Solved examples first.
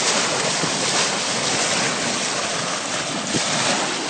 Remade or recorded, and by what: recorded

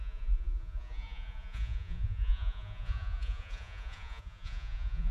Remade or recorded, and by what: remade, vocoder, Vocos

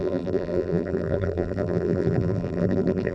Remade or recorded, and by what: remade, vocoder, BigVGAN v2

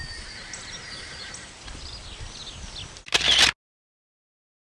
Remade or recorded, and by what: recorded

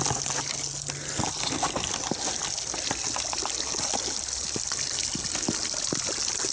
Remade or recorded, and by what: recorded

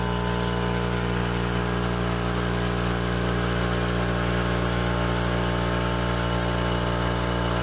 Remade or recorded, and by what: recorded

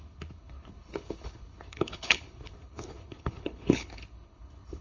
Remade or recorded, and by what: remade, codec, HILCodec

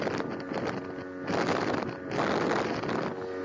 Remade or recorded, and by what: recorded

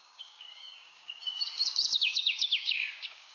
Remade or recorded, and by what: remade, codec, DAC